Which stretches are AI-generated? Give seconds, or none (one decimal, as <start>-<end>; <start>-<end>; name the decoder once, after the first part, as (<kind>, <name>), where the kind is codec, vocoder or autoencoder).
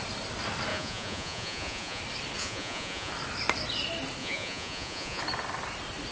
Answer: 0.7-2.0 (vocoder, Vocos); 2.4-3.1; 4.2-5.2